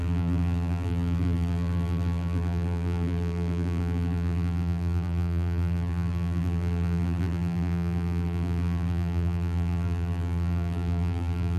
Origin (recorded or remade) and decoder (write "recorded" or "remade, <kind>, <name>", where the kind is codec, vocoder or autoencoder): remade, vocoder, BigVGAN v2